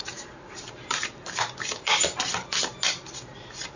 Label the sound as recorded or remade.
remade